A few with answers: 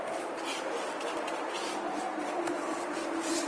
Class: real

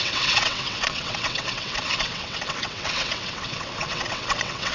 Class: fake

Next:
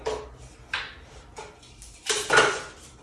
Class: real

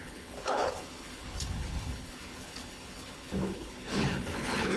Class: fake